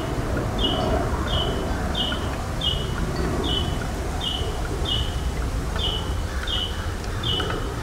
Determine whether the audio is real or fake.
real